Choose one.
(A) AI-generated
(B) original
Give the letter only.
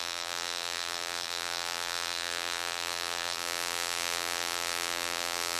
A